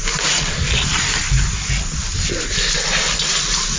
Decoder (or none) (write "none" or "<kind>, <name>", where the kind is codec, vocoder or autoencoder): none